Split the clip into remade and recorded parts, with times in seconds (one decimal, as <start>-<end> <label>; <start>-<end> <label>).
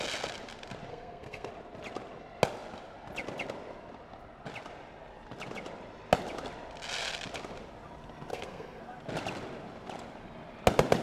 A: 0.0-0.9 recorded; 0.9-1.5 remade; 1.5-8.3 recorded; 8.3-8.8 remade; 8.8-11.0 recorded